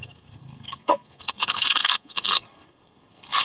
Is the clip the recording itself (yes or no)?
no